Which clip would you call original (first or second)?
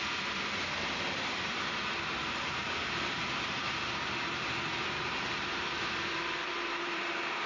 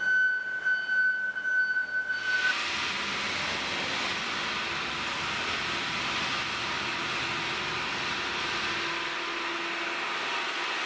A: second